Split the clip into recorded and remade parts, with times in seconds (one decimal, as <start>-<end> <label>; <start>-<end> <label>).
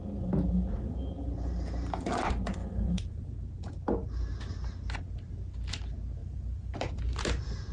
0.0-2.6 recorded; 2.6-3.3 remade; 3.3-6.2 recorded; 6.2-6.9 remade; 6.9-7.7 recorded